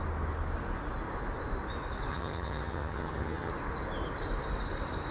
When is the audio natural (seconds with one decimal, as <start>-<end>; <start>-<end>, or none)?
0.0-2.1; 3.5-5.1

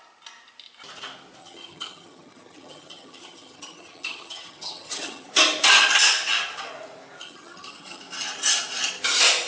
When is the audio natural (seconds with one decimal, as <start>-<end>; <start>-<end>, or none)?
0.0-1.4; 5.3-7.2; 8.0-9.5

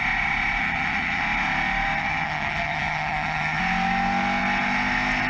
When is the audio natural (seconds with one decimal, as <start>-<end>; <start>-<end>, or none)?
0.0-0.6; 1.2-2.0; 3.6-5.3

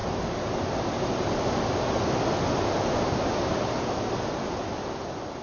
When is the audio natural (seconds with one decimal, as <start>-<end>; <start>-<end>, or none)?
0.0-5.4

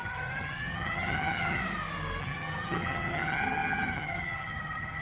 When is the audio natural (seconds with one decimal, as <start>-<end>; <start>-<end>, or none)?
1.6-2.2

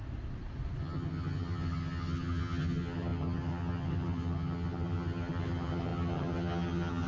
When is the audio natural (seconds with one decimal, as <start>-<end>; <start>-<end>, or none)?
0.0-0.8

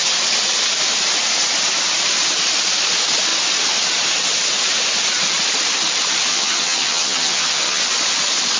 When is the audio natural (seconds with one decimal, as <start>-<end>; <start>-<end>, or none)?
0.0-6.3; 7.8-8.6

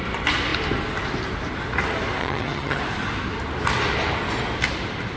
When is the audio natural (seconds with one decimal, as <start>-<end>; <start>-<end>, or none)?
0.0-2.2; 2.8-5.2